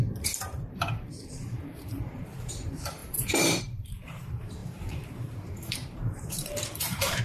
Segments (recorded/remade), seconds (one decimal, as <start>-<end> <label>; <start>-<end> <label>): 0.0-7.2 remade